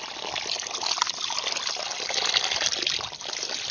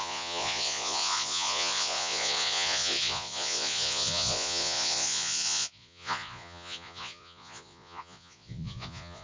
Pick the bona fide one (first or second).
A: first